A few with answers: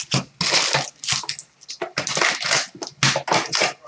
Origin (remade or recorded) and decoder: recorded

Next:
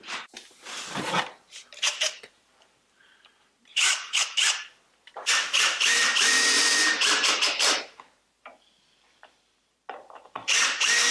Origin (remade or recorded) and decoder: remade, vocoder, BigVGAN v2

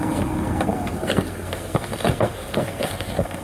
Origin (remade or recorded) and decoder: remade, codec, SNAC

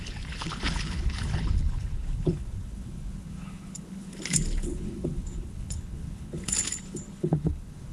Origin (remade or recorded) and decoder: remade, codec, HILCodec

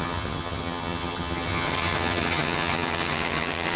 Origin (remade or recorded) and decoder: remade, vocoder, HiFi-GAN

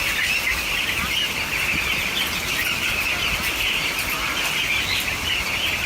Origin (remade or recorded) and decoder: recorded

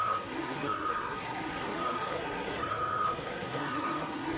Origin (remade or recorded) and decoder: remade, codec, SNAC